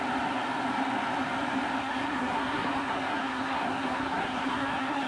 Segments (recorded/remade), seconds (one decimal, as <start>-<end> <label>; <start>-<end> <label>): 0.0-1.8 recorded; 1.8-5.1 remade